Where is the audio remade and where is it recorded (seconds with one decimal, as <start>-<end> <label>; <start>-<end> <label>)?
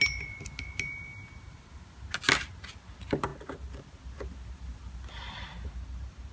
0.0-6.3 recorded